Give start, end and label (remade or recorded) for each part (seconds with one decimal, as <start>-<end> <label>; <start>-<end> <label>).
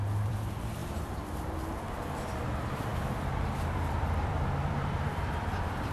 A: 0.0-0.8 remade; 0.8-1.8 recorded; 1.8-5.9 remade